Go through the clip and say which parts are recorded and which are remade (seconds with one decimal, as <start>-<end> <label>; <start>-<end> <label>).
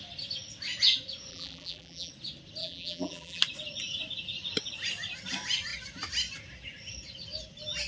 0.0-1.3 recorded; 1.3-2.1 remade; 2.1-2.6 recorded; 2.6-3.4 remade; 3.4-7.9 recorded